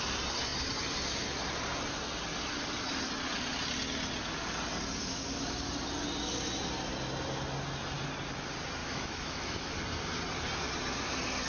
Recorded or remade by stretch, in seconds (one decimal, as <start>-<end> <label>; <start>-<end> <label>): 0.0-8.8 recorded; 8.8-9.7 remade; 9.7-11.5 recorded